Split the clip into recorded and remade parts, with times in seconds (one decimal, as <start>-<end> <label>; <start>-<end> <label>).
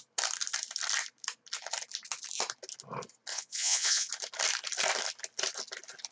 0.0-3.3 recorded; 3.3-4.1 remade; 4.1-6.1 recorded